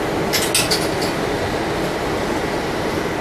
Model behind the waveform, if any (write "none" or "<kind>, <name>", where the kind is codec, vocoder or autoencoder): none